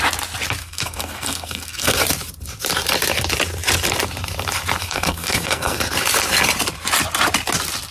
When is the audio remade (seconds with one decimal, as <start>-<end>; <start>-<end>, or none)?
0.6-1.9; 4.8-5.8